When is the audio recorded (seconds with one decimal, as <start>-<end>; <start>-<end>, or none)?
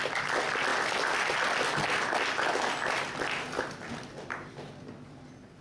0.0-5.6